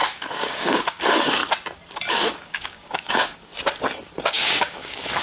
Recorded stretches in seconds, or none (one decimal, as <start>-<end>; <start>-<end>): 1.4-2.1; 3.5-4.3